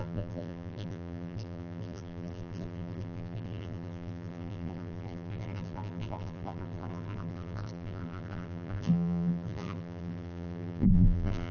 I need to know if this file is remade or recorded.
remade